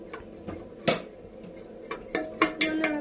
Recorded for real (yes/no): yes